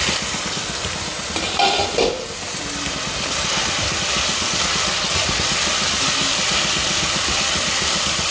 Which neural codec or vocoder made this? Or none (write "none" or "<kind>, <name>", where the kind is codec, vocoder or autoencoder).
none